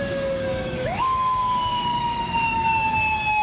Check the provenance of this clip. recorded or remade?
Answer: remade